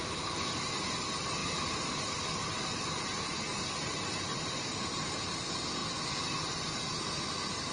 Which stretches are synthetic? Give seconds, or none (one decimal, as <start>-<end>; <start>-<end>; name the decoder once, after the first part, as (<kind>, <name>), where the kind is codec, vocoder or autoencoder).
none